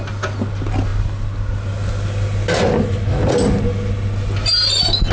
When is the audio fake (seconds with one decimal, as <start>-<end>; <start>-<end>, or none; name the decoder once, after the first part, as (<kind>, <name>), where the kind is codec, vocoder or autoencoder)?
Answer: none